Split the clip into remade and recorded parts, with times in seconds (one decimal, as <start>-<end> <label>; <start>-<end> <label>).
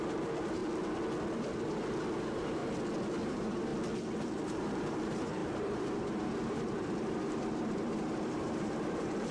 0.0-0.6 remade; 0.6-2.2 recorded; 2.2-2.6 remade; 2.6-3.2 recorded; 3.2-3.7 remade; 3.7-4.2 recorded; 4.2-9.3 remade